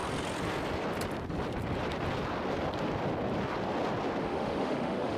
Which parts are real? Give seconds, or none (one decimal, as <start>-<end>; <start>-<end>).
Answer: 0.0-4.2